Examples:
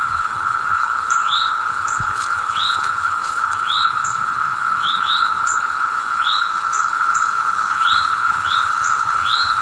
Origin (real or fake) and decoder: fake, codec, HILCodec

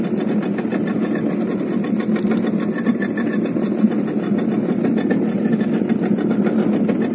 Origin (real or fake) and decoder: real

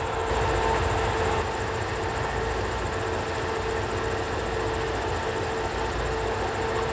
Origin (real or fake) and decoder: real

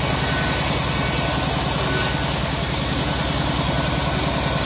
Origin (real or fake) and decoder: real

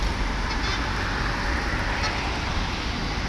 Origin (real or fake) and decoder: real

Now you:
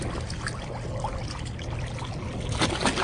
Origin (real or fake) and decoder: real